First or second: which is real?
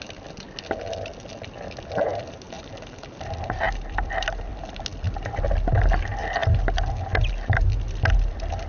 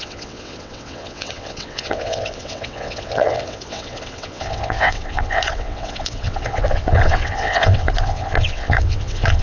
first